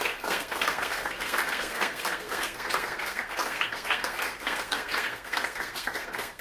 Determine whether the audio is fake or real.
fake